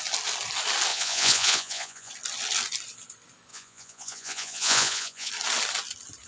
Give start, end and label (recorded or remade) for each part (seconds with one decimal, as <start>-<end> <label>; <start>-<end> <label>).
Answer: 0.0-0.9 recorded; 0.9-2.1 remade; 2.1-3.5 recorded; 3.5-5.3 remade; 5.3-6.3 recorded